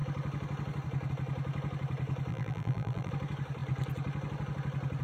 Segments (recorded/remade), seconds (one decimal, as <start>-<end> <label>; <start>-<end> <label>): 0.0-2.3 recorded; 2.3-3.1 remade; 3.1-5.0 recorded